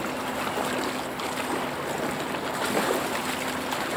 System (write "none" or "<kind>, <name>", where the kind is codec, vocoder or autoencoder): none